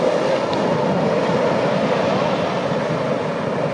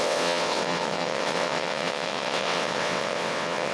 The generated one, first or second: second